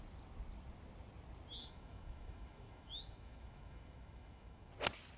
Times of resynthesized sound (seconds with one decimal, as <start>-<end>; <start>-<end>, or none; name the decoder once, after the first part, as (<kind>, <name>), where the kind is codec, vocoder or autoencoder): 1.6-4.7 (autoencoder, DAC-VAE)